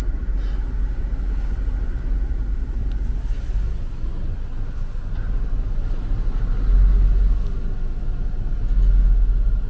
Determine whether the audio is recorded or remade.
recorded